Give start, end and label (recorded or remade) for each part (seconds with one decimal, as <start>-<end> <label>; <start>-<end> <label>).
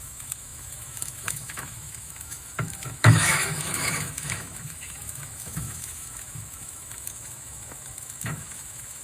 0.0-9.0 remade